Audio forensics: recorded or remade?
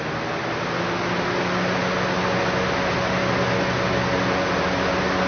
recorded